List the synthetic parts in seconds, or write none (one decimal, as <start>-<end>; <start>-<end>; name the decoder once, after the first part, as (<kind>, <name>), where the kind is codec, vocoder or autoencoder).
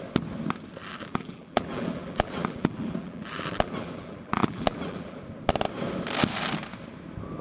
0.8-5.2 (vocoder, BigVGAN v2)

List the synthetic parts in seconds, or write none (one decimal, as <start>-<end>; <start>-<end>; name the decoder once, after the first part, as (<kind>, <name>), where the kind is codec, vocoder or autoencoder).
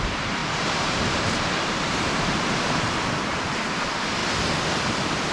0.0-4.2 (vocoder, BigVGAN v2)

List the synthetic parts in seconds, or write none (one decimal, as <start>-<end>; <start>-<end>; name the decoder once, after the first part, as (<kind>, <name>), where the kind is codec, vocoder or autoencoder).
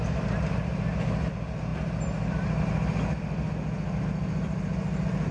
none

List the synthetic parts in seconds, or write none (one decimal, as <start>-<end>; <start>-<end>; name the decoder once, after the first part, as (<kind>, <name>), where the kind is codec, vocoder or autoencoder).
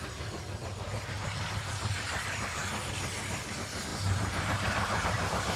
3.9-5.6 (vocoder, BigVGAN v2)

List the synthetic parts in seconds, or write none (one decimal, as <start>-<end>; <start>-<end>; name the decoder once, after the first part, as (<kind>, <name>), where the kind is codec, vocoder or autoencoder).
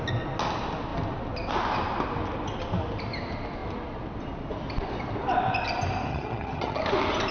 6.1-6.8 (vocoder, HiFi-GAN)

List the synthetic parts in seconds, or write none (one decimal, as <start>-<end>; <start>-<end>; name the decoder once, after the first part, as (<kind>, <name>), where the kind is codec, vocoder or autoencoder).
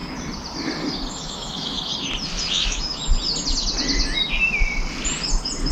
1.1-1.9 (autoencoder, DAC-VAE); 2.5-3.0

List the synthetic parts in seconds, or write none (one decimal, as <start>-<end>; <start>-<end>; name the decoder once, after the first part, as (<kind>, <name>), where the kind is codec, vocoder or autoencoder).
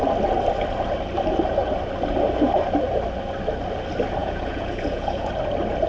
4.2-5.3 (vocoder, Vocos)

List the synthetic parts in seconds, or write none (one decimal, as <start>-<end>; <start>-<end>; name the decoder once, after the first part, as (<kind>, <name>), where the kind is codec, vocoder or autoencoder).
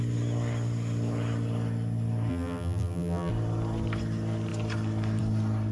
2.3-3.3 (vocoder, BigVGAN v2)